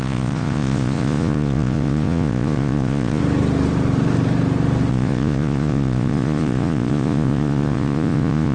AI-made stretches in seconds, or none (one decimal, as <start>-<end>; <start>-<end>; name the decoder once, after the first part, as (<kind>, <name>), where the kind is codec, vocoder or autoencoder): 0.0-3.2 (vocoder, Vocos); 4.9-8.5